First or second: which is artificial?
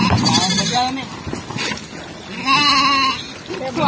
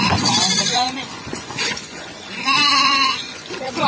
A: second